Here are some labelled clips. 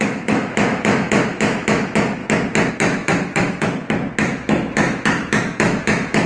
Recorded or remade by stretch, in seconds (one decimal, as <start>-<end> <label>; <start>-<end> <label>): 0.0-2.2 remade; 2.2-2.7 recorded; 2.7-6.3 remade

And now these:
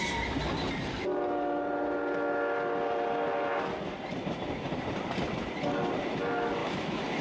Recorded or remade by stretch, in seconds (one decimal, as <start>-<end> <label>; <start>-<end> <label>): 0.0-6.6 recorded; 6.6-7.2 remade

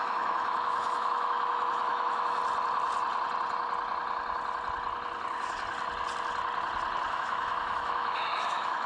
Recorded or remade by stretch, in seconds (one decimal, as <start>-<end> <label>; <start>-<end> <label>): 0.0-2.4 remade; 2.4-7.1 recorded; 7.1-8.9 remade

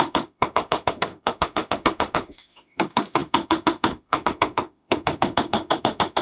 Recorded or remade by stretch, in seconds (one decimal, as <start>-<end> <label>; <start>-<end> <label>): 0.0-6.2 remade

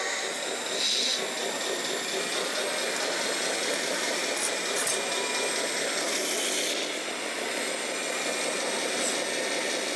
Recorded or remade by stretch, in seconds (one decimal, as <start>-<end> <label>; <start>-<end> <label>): 0.0-10.0 recorded

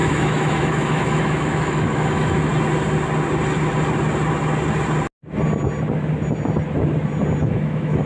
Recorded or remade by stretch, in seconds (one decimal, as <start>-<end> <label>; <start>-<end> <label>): 0.0-2.5 remade; 2.5-7.4 recorded; 7.4-8.1 remade